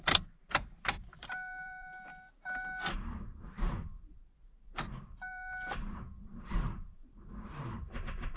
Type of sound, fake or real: fake